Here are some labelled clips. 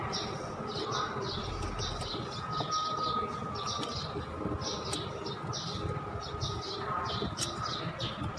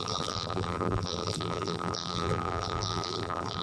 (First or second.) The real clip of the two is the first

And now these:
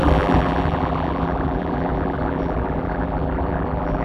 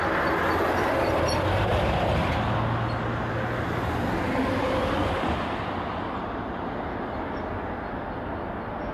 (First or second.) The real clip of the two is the second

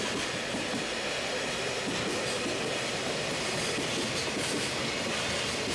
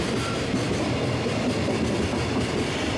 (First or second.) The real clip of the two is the first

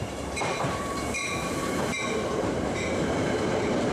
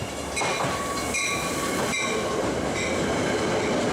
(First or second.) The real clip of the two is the second